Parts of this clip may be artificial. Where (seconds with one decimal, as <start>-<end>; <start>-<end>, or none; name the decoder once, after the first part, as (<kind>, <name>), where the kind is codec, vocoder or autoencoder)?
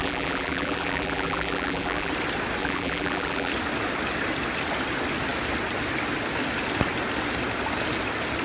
0.0-2.1 (vocoder, BigVGAN v2); 2.6-3.5